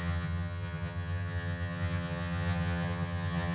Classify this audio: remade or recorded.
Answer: remade